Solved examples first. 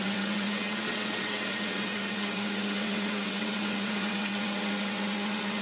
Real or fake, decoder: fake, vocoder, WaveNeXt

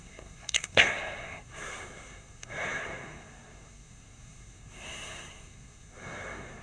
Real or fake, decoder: fake, codec, SNAC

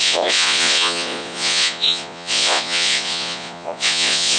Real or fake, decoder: fake, vocoder, Vocos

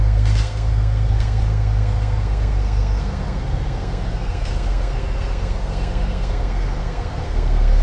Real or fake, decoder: fake, codec, SNAC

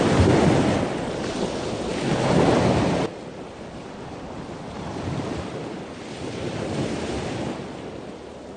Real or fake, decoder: real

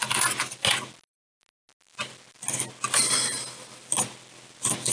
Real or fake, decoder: real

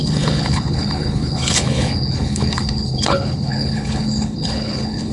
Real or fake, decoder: fake, codec, HILCodec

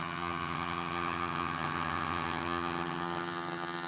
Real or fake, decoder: fake, vocoder, HiFi-GAN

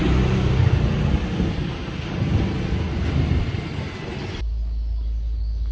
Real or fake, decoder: real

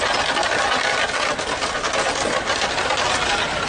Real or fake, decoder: real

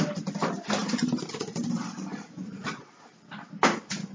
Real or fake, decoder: fake, vocoder, BigVGAN v2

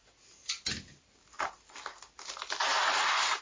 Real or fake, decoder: real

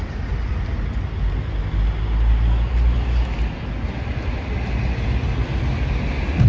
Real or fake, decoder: real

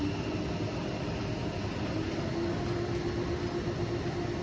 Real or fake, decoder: real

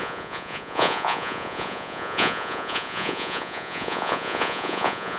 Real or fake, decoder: fake, vocoder, Vocos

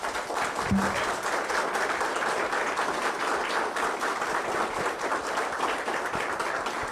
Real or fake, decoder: fake, vocoder, BigVGAN v2